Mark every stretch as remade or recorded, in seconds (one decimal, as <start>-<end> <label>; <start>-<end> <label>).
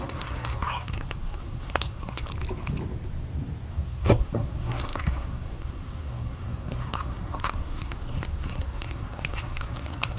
0.0-2.3 remade; 2.3-3.7 recorded; 3.7-10.2 remade